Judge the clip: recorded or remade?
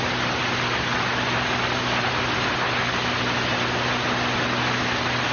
recorded